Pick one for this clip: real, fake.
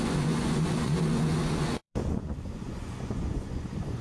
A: fake